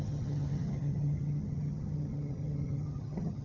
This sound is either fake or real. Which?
fake